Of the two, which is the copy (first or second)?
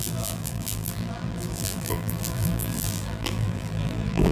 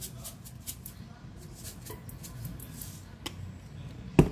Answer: first